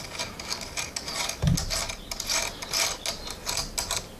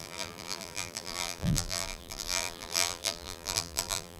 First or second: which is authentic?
first